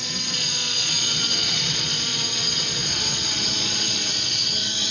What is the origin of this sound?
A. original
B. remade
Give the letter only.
B